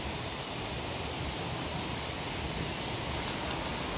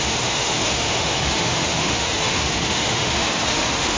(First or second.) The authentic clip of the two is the first